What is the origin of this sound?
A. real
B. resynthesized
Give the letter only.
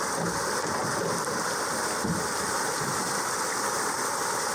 A